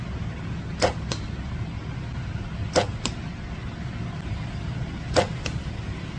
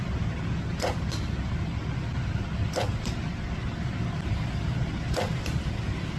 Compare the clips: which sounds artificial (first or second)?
second